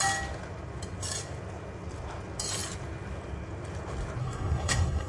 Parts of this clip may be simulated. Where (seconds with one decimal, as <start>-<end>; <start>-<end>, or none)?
4.2-5.1